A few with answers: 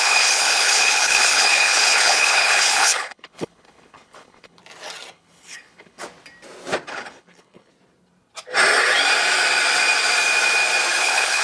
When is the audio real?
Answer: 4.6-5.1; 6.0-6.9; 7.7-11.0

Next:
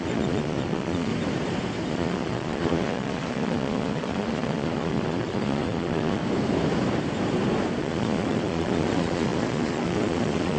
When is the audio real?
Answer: 1.1-1.9; 6.2-7.8

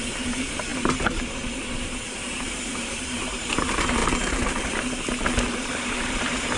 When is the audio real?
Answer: 4.0-5.5

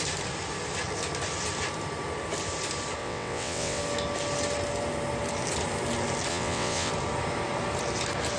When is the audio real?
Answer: 0.0-3.0; 3.8-6.3; 6.9-8.4

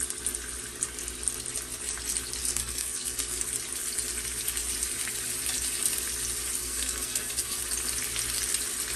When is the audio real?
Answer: 0.0-2.4; 3.4-6.6; 7.6-9.0

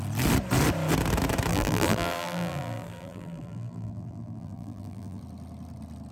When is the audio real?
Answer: 0.0-1.5; 5.2-6.1

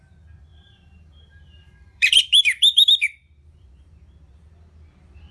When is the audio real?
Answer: 0.0-0.5; 3.7-5.3

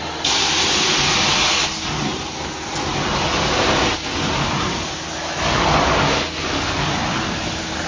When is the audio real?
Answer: 0.0-7.9